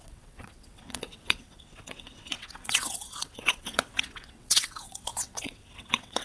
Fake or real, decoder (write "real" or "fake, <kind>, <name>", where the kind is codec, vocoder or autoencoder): fake, vocoder, WaveNeXt